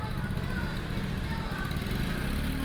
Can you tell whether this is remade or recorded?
recorded